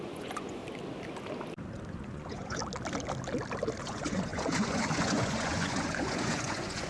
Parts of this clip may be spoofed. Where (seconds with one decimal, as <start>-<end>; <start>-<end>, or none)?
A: 0.0-0.6; 1.9-2.6; 3.8-6.9